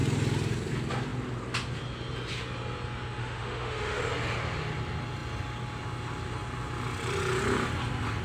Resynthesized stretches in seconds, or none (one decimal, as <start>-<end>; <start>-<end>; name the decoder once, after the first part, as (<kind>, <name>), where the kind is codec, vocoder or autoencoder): 3.2-4.0 (autoencoder, DAC-VAE)